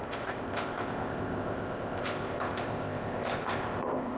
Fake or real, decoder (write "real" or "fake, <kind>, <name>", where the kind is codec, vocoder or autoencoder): fake, codec, ZipCodec